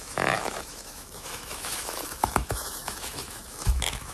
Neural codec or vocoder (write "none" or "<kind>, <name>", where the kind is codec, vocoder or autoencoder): autoencoder, DAC-VAE